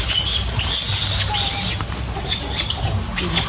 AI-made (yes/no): no